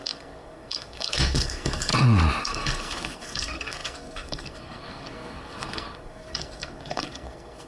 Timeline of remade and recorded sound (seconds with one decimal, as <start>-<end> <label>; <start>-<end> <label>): 0.0-1.9 remade; 1.9-2.4 recorded; 2.4-7.7 remade